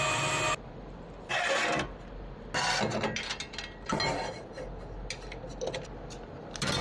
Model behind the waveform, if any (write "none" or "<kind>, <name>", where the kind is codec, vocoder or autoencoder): none